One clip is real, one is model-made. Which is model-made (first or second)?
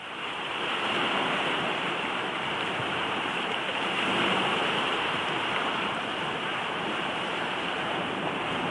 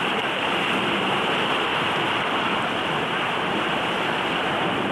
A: first